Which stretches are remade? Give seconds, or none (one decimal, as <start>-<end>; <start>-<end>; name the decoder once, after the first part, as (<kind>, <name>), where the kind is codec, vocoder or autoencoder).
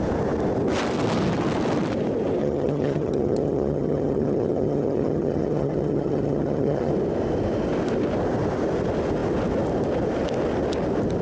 2.4-6.9 (vocoder, HiFi-GAN)